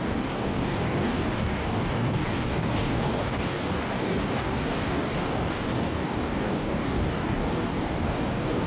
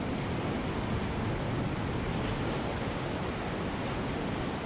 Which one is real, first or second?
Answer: second